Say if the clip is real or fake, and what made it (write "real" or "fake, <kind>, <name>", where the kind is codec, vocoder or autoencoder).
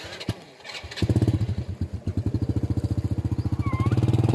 real